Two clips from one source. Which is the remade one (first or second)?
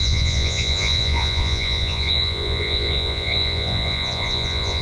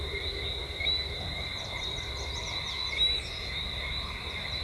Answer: first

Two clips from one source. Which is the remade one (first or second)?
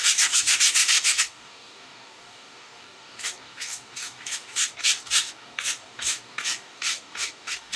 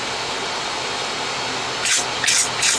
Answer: first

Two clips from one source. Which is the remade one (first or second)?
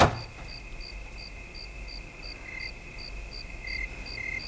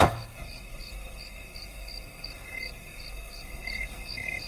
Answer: second